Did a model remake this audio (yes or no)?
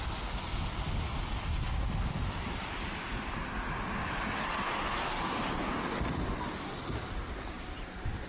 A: no